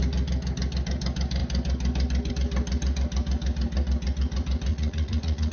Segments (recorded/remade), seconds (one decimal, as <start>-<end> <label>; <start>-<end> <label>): 0.0-4.7 recorded; 4.7-5.5 remade